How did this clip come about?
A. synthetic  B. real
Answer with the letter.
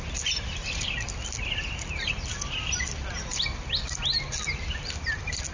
B